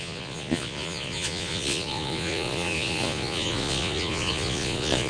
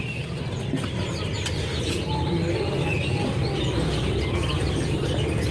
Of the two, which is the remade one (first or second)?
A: first